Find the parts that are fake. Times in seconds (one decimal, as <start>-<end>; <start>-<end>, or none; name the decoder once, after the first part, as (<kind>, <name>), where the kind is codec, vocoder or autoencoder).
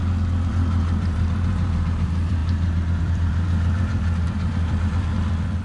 0.5-2.4 (vocoder, BigVGAN v2); 3.0-5.6